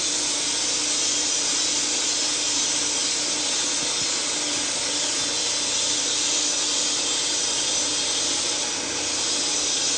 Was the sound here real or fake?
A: real